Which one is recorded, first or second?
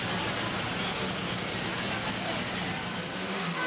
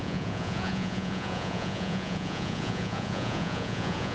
first